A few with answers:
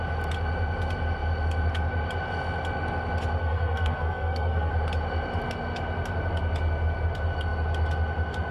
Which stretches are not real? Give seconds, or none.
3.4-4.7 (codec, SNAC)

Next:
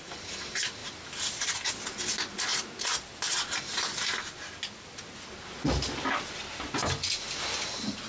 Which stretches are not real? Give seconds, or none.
none

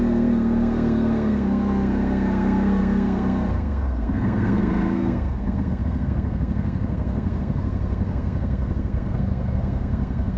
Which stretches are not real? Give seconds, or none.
0.0-10.4 (codec, SNAC)

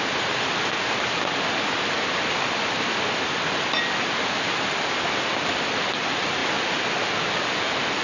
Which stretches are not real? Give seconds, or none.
none